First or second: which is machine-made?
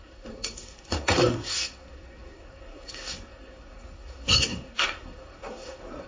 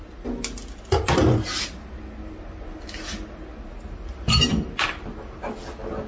first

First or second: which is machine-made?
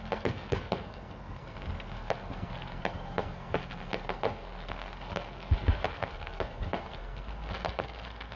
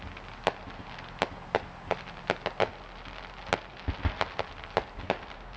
first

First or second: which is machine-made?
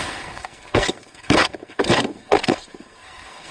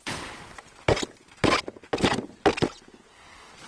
first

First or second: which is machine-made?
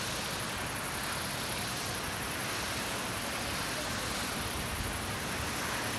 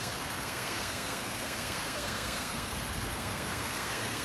second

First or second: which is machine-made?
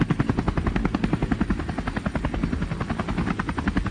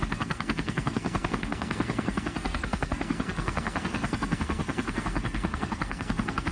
second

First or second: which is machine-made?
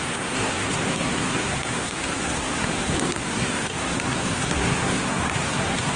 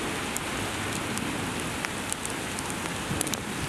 first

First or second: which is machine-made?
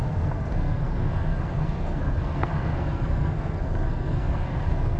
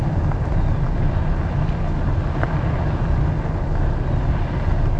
first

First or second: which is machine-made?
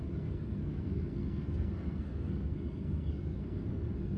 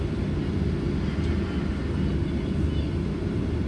first